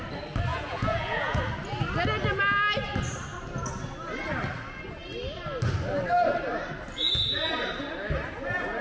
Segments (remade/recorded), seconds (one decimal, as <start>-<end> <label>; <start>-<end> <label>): 0.0-0.5 recorded; 0.5-1.4 remade; 1.4-8.8 recorded